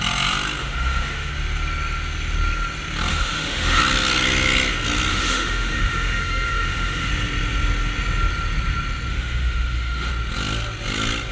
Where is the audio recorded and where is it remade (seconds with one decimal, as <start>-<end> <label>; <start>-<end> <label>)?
0.0-0.6 recorded; 0.6-1.3 remade; 1.3-3.1 recorded; 3.1-3.8 remade; 3.8-5.1 recorded; 5.1-7.1 remade; 7.1-9.1 recorded; 9.1-10.1 remade; 10.1-11.3 recorded